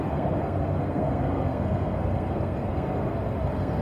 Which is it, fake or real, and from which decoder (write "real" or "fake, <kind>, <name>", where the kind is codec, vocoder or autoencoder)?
fake, codec, SNAC